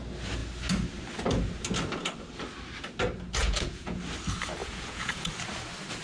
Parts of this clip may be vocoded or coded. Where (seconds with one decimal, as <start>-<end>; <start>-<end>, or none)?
3.4-4.0; 4.6-5.3